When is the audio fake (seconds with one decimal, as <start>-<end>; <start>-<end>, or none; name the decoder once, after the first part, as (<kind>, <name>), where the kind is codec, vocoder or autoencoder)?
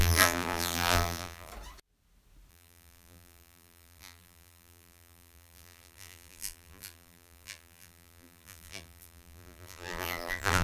0.0-1.5 (vocoder, BigVGAN v2); 2.5-10.6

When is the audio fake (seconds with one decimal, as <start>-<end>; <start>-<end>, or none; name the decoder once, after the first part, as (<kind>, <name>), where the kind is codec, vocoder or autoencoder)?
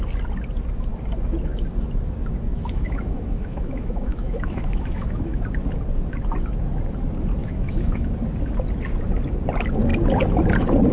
2.5-5.4 (autoencoder, DAC-VAE); 7.4-8.1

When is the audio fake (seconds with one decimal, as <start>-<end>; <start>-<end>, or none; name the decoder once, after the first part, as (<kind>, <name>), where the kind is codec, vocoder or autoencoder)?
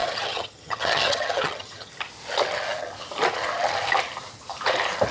0.0-1.9 (vocoder, HiFi-GAN)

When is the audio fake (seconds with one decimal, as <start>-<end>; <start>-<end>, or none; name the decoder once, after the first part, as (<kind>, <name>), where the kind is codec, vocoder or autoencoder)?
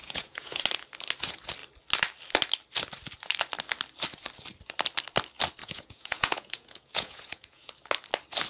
0.0-0.6 (vocoder, Vocos); 5.6-7.7